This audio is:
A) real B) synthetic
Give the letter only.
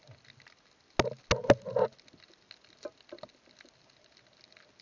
A